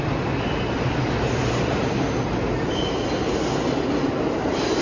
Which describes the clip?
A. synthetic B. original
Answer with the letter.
B